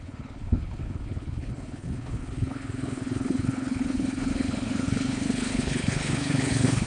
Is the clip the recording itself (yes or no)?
no